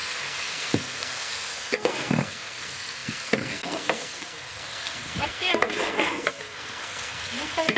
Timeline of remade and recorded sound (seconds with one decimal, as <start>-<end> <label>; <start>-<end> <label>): 0.0-7.8 remade